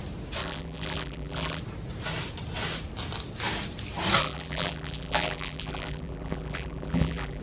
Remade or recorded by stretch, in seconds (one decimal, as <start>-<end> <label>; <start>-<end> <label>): 0.0-0.4 recorded; 0.4-1.6 remade; 1.6-4.2 recorded; 4.2-7.4 remade